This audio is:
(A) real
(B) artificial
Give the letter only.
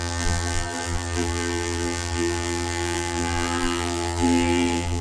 B